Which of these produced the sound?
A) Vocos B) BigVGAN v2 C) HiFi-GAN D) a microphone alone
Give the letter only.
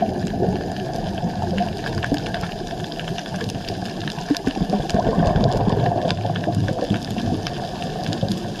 D